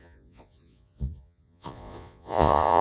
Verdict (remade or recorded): remade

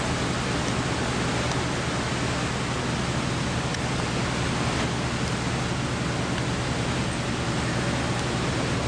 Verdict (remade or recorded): recorded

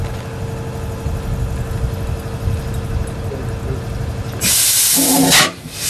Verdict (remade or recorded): recorded